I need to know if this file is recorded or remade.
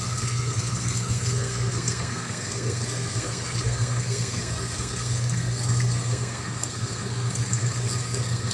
remade